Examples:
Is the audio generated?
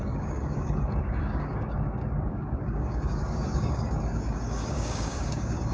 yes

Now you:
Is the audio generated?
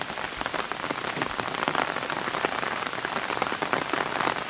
no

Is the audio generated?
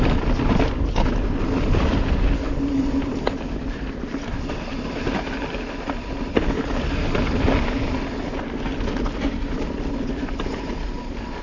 no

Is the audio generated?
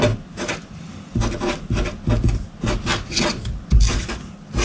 no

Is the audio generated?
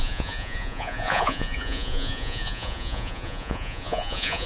yes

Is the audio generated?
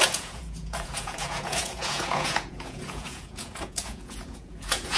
yes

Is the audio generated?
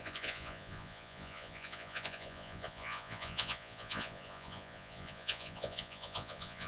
yes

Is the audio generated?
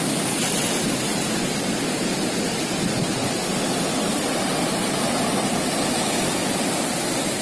no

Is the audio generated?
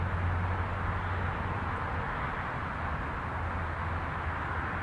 no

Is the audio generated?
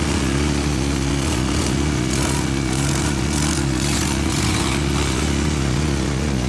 yes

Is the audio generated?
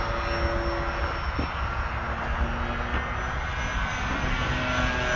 no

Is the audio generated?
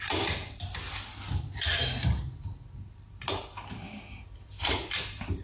no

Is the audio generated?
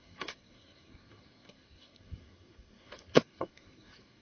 yes